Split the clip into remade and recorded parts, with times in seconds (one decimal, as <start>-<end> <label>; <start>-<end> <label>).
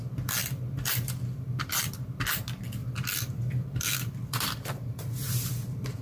0.0-0.4 recorded; 0.4-2.2 remade; 2.2-2.8 recorded; 2.8-6.0 remade